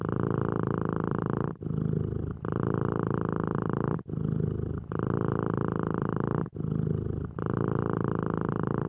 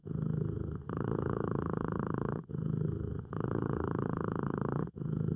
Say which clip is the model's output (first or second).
second